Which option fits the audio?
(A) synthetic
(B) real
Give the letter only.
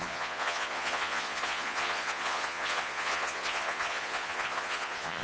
A